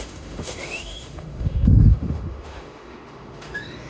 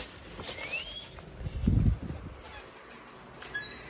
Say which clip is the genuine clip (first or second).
second